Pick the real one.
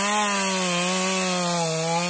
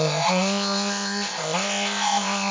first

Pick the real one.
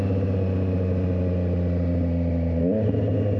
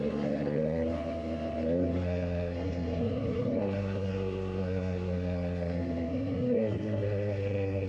first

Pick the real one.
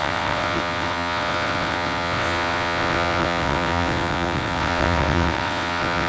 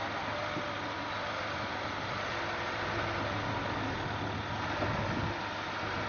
second